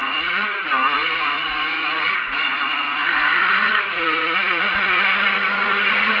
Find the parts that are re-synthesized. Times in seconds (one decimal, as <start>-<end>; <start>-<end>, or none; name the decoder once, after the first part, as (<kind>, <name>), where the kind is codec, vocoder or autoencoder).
0.0-6.2 (vocoder, Vocos)